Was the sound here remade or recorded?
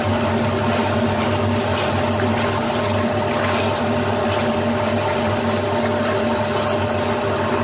recorded